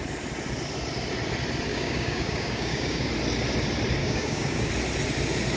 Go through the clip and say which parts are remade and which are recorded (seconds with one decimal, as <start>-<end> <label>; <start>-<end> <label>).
0.0-1.7 recorded; 1.7-3.1 remade; 3.1-4.0 recorded; 4.0-4.7 remade; 4.7-5.6 recorded